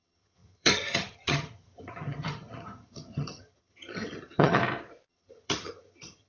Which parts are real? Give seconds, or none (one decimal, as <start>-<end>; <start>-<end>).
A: 4.6-5.1